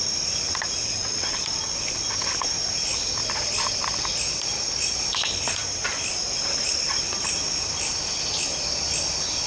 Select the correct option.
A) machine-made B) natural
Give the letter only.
B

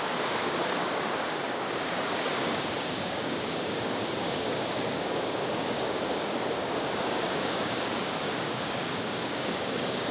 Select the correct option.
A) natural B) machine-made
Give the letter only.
B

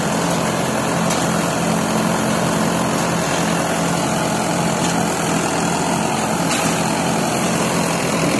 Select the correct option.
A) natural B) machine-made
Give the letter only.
A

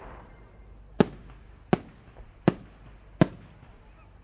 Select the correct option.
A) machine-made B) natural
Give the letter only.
B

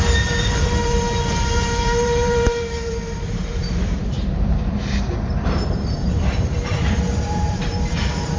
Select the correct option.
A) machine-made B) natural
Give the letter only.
A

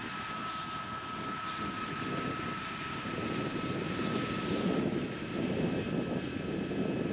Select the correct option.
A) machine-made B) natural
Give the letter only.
A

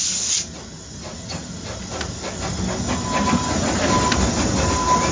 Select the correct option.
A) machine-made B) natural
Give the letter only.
B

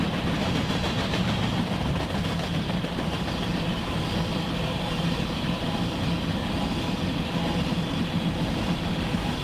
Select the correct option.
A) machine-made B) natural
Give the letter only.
A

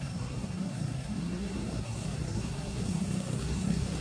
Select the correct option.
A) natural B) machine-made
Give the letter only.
B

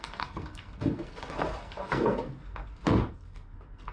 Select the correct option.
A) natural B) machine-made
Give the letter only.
B